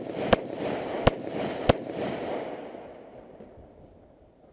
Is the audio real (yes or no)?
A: yes